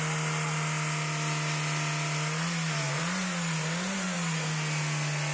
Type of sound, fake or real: real